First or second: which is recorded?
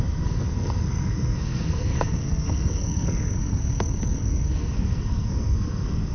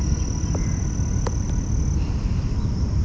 second